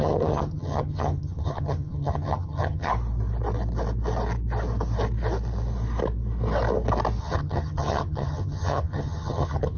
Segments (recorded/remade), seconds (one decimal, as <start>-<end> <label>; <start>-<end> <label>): 0.0-2.9 remade; 2.9-7.2 recorded; 7.2-9.8 remade